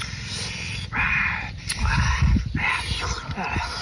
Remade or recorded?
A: recorded